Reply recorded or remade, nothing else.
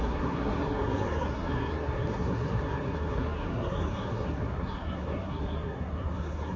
remade